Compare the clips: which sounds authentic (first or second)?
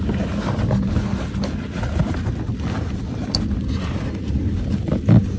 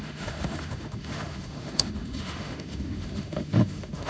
first